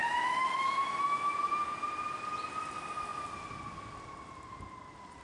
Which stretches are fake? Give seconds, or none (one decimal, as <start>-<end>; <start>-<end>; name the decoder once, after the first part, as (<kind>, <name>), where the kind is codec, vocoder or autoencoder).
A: 0.0-1.6 (autoencoder, DAC-VAE)